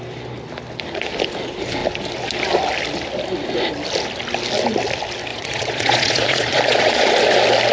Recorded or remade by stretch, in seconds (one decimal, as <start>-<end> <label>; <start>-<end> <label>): 0.0-5.3 recorded; 5.3-7.1 remade; 7.1-7.7 recorded